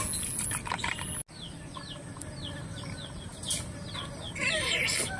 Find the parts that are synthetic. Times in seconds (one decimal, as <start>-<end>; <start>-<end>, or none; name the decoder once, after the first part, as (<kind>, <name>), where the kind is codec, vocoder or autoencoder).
none